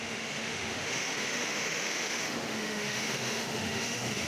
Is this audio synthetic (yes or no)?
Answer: yes